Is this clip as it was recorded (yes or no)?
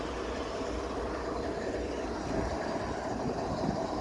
yes